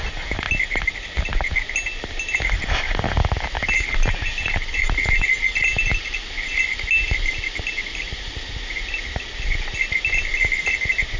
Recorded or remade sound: recorded